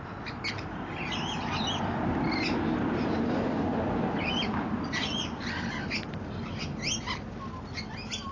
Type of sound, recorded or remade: recorded